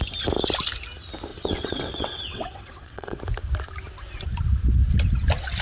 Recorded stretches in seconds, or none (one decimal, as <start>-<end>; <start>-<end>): 0.0-1.3; 3.2-5.6